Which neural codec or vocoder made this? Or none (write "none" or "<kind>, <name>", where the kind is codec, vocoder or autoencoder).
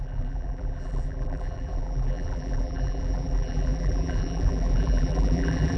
vocoder, BigVGAN v2